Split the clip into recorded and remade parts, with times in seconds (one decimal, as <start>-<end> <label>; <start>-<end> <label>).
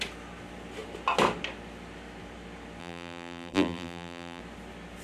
0.0-2.8 recorded; 2.8-4.4 remade; 4.4-5.0 recorded